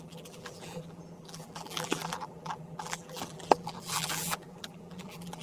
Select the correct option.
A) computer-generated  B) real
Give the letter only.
A